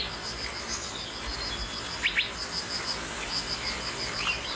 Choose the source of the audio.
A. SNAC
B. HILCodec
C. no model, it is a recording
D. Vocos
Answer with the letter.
C